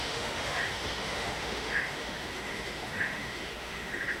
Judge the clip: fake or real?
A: fake